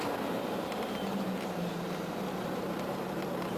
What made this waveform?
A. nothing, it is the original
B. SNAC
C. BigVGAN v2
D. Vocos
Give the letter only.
C